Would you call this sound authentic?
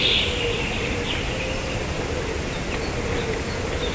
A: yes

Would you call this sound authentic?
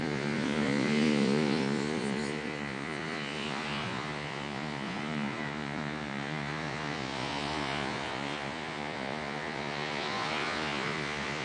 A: no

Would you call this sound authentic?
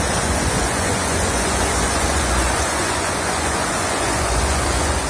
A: no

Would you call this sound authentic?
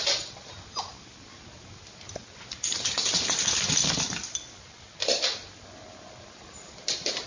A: yes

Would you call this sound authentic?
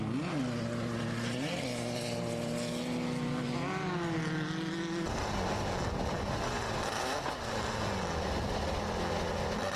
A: yes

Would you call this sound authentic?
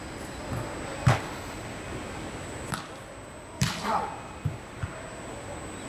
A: yes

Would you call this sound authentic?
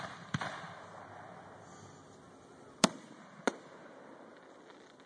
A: yes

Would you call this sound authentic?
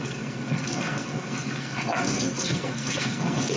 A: no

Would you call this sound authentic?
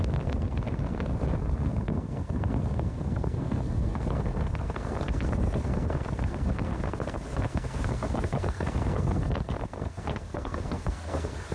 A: no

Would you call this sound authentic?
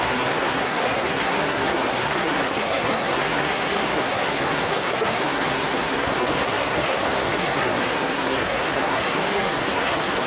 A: no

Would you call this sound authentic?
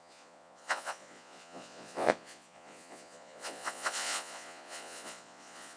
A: no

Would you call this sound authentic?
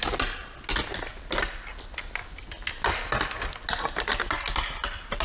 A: yes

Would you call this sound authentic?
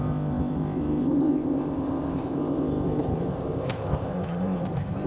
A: no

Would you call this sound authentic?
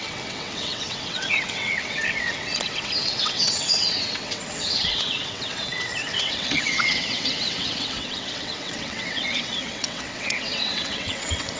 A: no